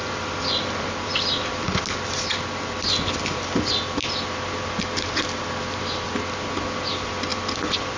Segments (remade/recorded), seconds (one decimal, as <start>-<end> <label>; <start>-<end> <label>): 0.0-1.8 remade; 1.8-7.3 recorded; 7.3-8.0 remade